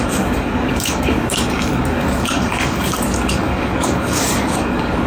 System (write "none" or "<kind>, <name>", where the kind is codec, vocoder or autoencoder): codec, DAC